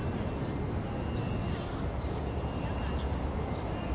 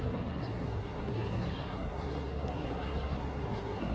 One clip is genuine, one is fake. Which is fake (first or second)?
second